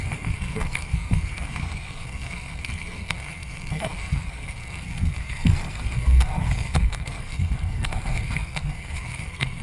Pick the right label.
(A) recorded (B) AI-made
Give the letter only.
B